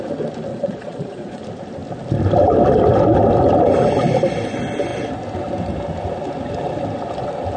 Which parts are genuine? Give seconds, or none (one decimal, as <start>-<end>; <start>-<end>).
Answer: 0.0-0.5; 1.4-7.6